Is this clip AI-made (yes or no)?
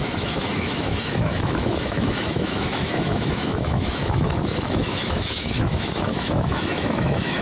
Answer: yes